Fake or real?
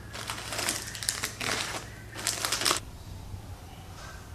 real